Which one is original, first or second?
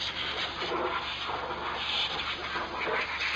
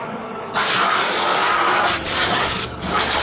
first